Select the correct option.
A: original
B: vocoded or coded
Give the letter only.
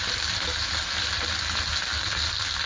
A